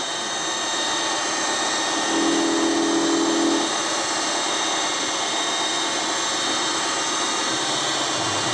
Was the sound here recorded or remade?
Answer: recorded